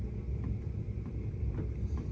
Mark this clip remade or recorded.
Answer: recorded